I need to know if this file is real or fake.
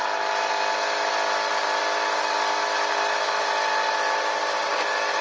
real